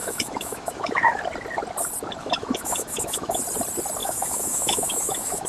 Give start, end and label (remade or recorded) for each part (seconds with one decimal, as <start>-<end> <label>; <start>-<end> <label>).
0.0-1.2 remade; 1.2-2.2 recorded; 2.2-3.4 remade; 3.4-4.0 recorded; 4.0-5.5 remade